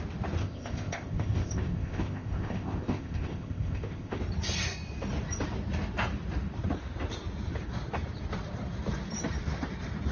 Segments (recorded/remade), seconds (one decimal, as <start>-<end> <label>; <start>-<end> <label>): 0.0-0.4 recorded; 0.4-4.2 remade; 4.2-10.1 recorded